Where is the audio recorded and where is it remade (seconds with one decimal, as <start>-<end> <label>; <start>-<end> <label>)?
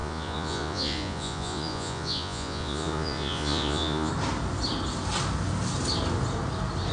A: 0.0-4.1 remade; 4.1-6.9 recorded